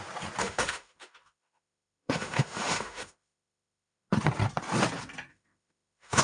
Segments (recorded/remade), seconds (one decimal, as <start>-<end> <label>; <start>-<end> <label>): 0.0-0.4 recorded; 0.4-4.1 remade; 4.1-5.3 recorded; 5.3-6.2 remade